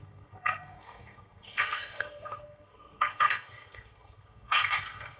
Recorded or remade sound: remade